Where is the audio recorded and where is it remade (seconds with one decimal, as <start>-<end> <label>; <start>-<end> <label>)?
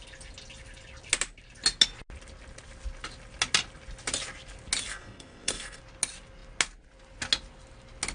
0.0-4.9 recorded; 4.9-5.8 remade; 5.8-8.1 recorded